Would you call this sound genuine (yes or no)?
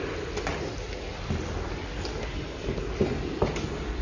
yes